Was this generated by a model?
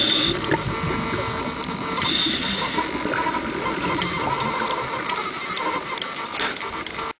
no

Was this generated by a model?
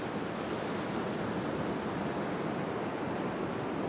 no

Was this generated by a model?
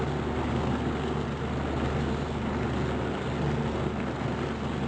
no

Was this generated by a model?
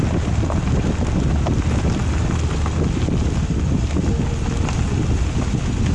no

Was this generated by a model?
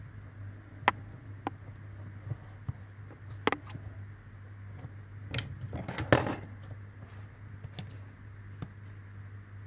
no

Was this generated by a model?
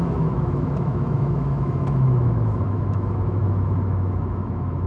yes